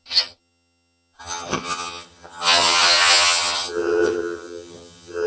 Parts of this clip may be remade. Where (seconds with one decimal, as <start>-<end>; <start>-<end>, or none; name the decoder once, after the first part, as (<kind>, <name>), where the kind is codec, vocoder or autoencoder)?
0.0-5.3 (vocoder, HiFi-GAN)